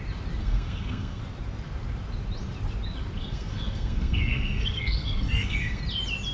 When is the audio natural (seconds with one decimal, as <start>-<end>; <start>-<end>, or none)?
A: 0.0-0.4; 1.2-3.2; 5.8-6.3